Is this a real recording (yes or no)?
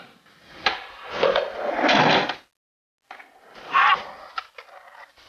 yes